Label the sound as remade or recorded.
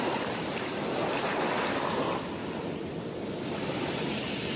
recorded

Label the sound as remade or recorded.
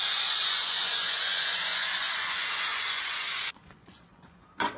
remade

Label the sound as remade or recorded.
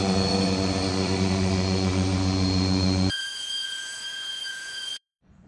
remade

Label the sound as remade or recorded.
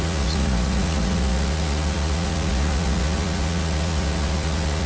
remade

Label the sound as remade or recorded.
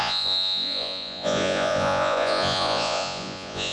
remade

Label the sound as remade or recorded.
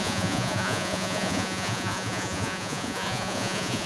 remade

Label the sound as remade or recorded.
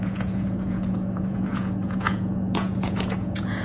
remade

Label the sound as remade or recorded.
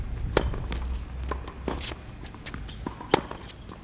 recorded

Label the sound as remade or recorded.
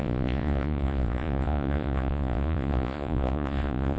remade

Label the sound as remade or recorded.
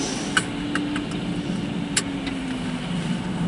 recorded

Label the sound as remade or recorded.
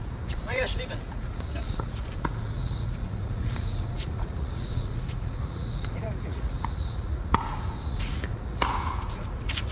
remade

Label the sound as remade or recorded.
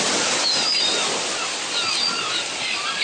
recorded